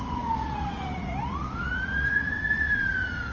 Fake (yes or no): yes